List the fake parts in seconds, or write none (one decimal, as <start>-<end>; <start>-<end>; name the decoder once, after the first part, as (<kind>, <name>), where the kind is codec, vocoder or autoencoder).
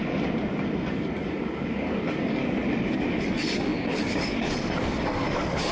0.9-2.4 (codec, DAC); 3.1-5.7